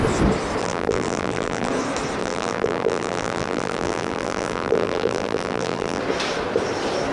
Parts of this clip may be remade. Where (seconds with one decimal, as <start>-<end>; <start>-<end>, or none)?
0.6-1.7; 2.2-6.0